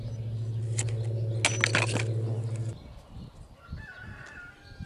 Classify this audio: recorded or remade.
recorded